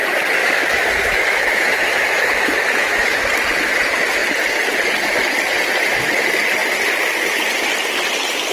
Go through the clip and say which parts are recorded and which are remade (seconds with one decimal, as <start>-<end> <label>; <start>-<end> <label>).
0.0-0.4 recorded; 0.4-3.3 remade; 3.3-8.5 recorded